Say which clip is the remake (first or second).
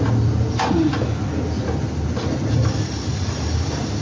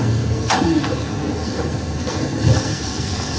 second